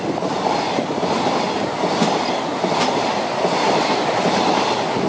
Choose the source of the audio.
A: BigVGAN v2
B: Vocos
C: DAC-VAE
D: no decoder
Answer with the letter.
D